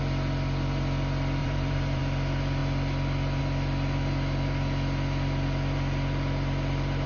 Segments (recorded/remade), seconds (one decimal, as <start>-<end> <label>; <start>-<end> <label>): 0.0-1.4 recorded; 1.4-2.0 remade; 2.0-7.1 recorded